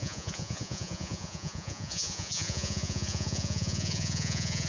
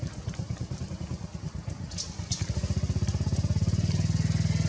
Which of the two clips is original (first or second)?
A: second